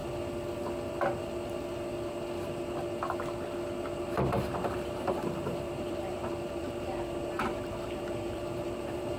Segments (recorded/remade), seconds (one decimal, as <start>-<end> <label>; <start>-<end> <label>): 0.0-4.0 recorded; 4.0-9.2 remade